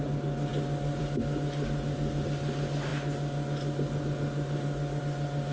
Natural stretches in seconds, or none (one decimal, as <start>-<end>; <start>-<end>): 0.0-5.5